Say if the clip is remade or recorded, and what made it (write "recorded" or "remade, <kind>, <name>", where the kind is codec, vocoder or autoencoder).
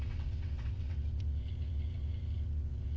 remade, vocoder, WaveNeXt